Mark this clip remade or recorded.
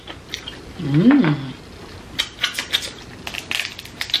recorded